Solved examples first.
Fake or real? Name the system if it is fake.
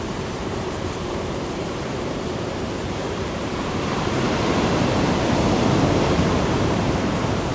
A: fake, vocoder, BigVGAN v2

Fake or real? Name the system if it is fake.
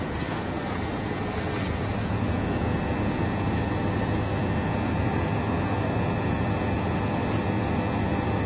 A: fake, vocoder, Vocos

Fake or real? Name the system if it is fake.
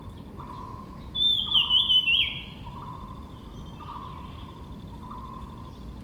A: real